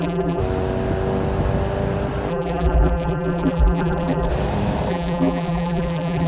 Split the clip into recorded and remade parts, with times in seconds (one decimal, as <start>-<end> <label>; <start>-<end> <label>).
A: 0.0-0.4 remade; 0.4-2.3 recorded; 2.3-4.3 remade; 4.3-4.9 recorded; 4.9-6.3 remade